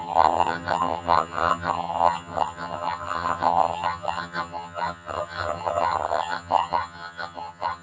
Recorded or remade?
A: remade